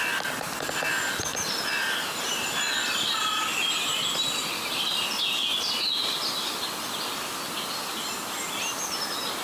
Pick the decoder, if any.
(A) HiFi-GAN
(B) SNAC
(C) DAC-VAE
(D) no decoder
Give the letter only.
D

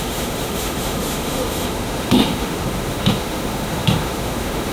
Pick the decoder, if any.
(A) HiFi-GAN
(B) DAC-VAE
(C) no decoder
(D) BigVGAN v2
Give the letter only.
B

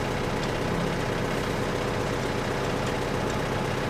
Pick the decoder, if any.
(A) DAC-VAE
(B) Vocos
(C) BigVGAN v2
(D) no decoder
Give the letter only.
D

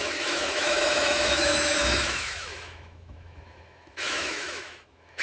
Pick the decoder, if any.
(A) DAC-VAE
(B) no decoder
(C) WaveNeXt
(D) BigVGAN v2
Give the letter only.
A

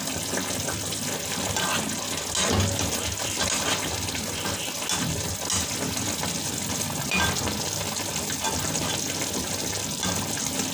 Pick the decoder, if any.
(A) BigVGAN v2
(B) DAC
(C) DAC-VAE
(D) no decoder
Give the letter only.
D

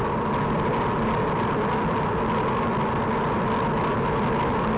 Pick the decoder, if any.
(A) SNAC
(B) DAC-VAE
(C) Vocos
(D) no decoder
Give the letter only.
D